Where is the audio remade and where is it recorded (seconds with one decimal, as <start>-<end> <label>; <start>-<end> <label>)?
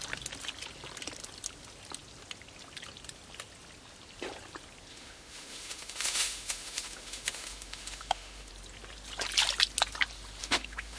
0.0-4.9 recorded; 4.9-8.5 remade; 8.5-10.4 recorded; 10.4-11.0 remade